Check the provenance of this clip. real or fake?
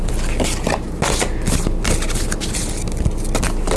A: real